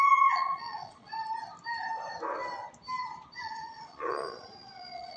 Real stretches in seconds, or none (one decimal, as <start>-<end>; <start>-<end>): 1.1-3.4